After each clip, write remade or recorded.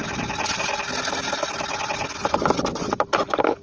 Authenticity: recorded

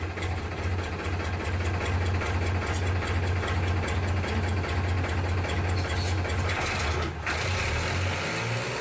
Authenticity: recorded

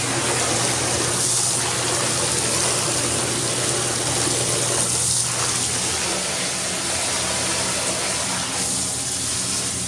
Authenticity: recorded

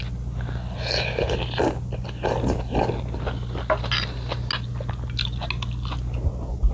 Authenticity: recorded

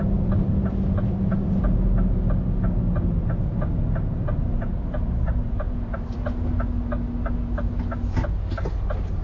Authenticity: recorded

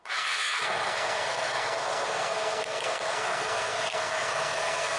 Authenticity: remade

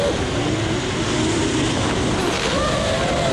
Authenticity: recorded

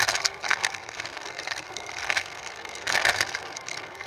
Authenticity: remade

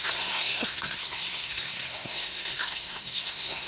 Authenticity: remade